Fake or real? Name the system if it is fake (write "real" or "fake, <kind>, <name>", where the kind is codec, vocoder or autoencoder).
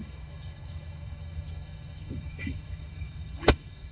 fake, autoencoder, DAC-VAE